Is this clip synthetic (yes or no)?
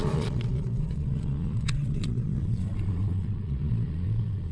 yes